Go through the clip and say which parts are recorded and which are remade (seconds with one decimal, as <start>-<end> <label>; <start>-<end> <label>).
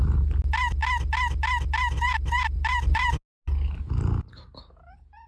0.0-5.3 recorded